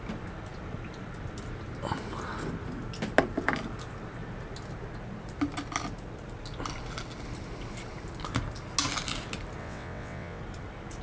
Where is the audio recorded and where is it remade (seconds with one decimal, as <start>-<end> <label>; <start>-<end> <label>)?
0.0-9.6 recorded; 9.6-10.4 remade; 10.4-11.0 recorded